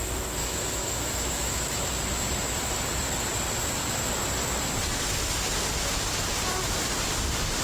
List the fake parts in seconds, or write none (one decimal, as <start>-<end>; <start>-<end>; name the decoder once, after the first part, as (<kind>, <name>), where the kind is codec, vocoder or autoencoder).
0.4-1.8 (autoencoder, DAC-VAE)